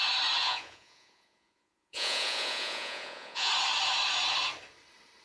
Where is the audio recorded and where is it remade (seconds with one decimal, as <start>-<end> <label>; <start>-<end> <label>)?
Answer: 0.0-0.4 recorded; 0.4-3.5 remade; 3.5-5.2 recorded